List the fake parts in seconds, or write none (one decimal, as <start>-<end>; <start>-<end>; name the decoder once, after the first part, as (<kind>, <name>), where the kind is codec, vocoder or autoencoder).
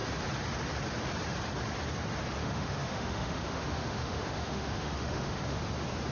2.4-5.6 (autoencoder, DAC-VAE)